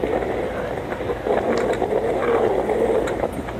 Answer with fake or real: real